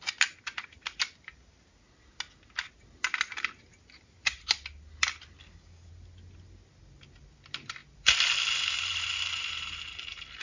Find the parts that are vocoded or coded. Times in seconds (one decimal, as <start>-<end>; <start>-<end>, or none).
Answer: 5.4-5.9